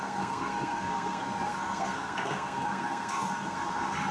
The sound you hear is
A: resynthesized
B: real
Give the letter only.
A